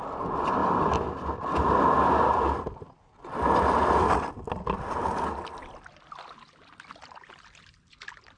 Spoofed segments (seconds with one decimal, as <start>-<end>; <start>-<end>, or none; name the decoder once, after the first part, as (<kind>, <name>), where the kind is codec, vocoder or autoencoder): none